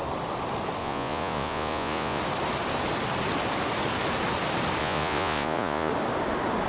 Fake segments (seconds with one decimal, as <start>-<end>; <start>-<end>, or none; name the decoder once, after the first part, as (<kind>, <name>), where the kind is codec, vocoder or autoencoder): 0.8-2.2 (vocoder, Vocos); 4.8-5.9